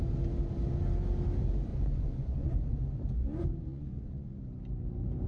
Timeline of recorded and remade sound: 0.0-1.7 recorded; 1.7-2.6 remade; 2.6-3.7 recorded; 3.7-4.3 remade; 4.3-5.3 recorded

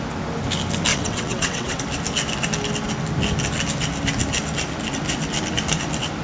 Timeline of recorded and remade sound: 0.0-0.9 recorded; 0.9-1.8 remade; 1.8-6.2 recorded

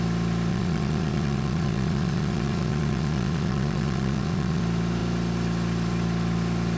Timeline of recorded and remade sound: 0.0-0.5 recorded; 0.5-4.6 remade; 4.6-6.8 recorded

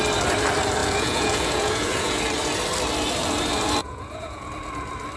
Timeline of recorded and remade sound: 0.0-0.8 recorded; 0.8-2.2 remade; 2.2-3.8 recorded; 3.8-4.5 remade; 4.5-5.2 recorded

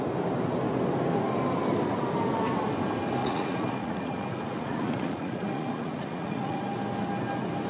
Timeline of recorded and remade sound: 0.0-3.2 recorded; 3.2-6.6 remade; 6.6-7.7 recorded

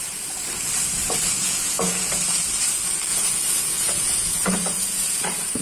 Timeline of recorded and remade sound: 0.0-1.4 recorded; 1.4-2.1 remade; 2.1-3.1 recorded; 3.1-5.6 remade

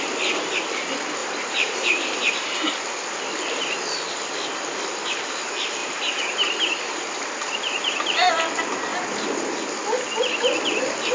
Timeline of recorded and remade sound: 0.0-1.2 recorded; 1.2-2.8 remade; 2.8-5.8 recorded; 5.8-8.3 remade; 8.3-11.1 recorded